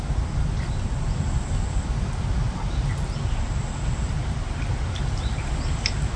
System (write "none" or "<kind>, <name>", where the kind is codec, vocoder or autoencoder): none